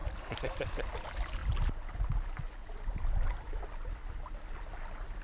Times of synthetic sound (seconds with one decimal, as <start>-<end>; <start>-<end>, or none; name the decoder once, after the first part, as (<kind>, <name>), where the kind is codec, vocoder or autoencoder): none